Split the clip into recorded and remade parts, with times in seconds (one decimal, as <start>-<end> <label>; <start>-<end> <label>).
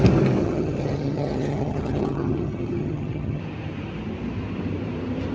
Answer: 0.0-0.4 recorded; 0.4-3.4 remade; 3.4-5.3 recorded